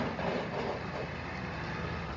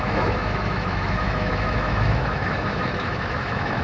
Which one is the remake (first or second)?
second